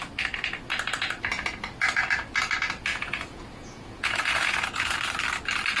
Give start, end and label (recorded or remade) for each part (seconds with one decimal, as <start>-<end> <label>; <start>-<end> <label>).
0.0-2.9 recorded; 2.9-5.0 remade; 5.0-5.8 recorded